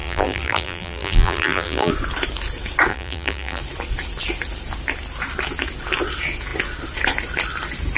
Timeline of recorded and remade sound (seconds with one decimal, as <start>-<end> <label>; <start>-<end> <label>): 0.0-1.9 remade; 1.9-2.9 recorded; 2.9-3.6 remade; 3.6-8.0 recorded